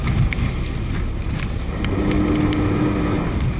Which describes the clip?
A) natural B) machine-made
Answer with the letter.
A